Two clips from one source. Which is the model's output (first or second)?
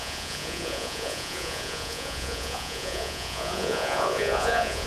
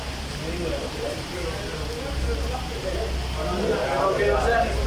first